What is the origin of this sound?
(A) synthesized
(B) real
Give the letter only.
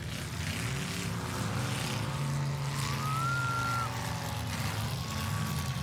B